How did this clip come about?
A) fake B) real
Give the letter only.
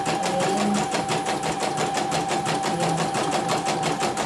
B